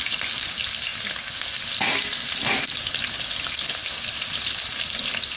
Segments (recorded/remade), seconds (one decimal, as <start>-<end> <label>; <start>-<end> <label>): 0.0-5.4 recorded